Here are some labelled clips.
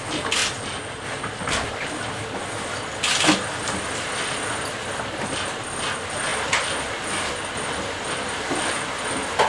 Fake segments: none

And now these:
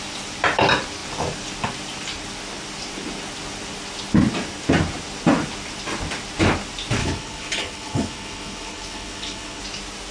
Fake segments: 7.0-9.6 (codec, HILCodec)